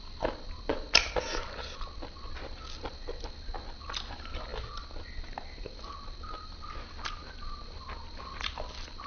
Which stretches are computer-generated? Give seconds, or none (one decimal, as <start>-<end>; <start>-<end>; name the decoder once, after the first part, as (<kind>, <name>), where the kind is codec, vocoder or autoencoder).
none